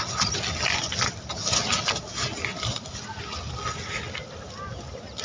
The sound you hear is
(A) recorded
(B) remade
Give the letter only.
A